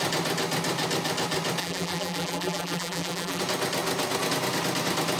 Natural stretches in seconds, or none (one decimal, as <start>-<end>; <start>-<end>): 0.0-1.6; 3.4-5.2